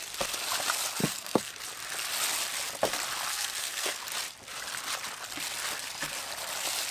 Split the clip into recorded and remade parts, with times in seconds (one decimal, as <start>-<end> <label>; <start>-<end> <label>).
0.0-1.0 recorded; 1.0-1.5 remade; 1.5-3.3 recorded; 3.3-4.0 remade; 4.0-6.9 recorded